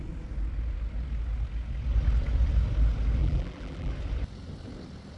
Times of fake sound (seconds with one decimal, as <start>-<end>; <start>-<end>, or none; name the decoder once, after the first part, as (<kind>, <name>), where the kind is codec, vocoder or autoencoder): 3.2-3.9 (vocoder, BigVGAN v2)